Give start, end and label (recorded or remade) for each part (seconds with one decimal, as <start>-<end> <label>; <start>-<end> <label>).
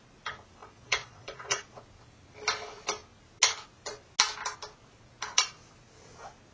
0.0-0.6 recorded; 0.6-1.8 remade; 1.8-6.5 recorded